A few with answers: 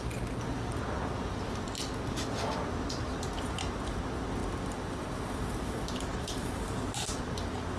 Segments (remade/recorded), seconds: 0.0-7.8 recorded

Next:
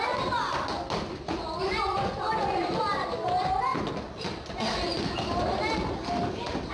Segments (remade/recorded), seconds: 0.0-1.9 recorded; 1.9-2.8 remade; 2.8-6.7 recorded

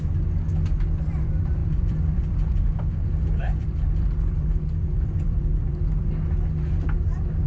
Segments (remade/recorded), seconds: 0.0-1.6 recorded; 1.6-6.1 remade; 6.1-7.5 recorded

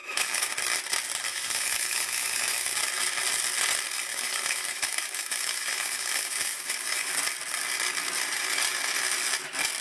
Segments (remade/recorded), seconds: 0.0-0.5 remade; 0.5-1.3 recorded; 1.3-2.8 remade; 2.8-4.1 recorded; 4.1-7.1 remade; 7.1-9.8 recorded

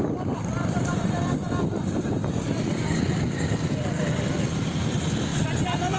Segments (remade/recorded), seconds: 0.0-0.5 recorded; 0.5-4.1 remade; 4.1-5.3 recorded; 5.3-6.0 remade